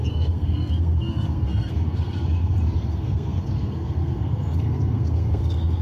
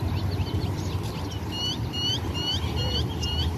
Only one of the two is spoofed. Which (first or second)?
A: first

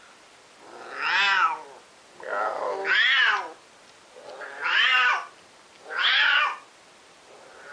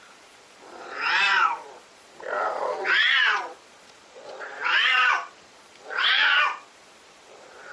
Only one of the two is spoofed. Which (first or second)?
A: second